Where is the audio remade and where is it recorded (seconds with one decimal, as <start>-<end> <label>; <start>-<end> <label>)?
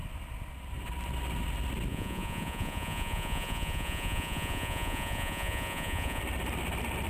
0.0-1.9 recorded; 1.9-6.2 remade; 6.2-7.1 recorded